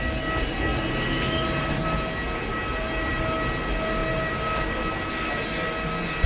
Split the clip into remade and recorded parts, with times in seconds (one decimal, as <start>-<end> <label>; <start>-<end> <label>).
0.0-6.3 recorded